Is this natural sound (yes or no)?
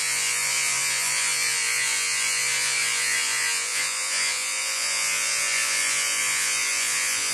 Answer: no